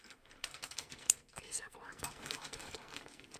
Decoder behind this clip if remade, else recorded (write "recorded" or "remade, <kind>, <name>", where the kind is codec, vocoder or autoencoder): remade, codec, SNAC